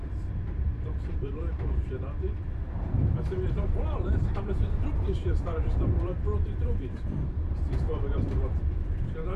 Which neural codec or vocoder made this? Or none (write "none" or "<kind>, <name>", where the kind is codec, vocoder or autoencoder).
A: vocoder, BigVGAN v2